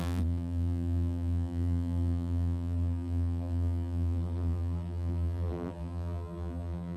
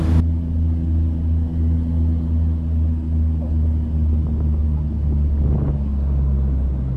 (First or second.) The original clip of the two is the second